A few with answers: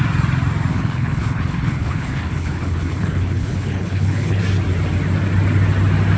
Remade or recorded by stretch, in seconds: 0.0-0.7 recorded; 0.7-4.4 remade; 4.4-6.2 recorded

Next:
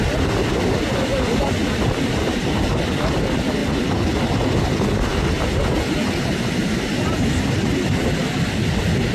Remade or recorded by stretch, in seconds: 0.0-1.6 recorded; 1.6-2.4 remade; 2.4-9.1 recorded

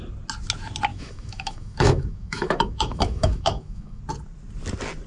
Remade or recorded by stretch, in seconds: 0.0-0.9 recorded; 0.9-4.0 remade; 4.0-5.1 recorded

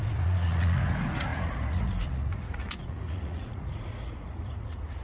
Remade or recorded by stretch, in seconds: 0.0-5.0 remade